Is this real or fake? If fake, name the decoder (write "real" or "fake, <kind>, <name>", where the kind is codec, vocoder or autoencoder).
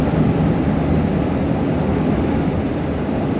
real